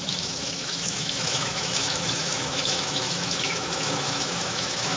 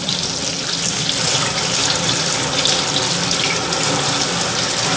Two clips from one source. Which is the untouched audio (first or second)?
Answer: second